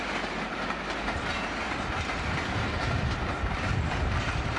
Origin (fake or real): fake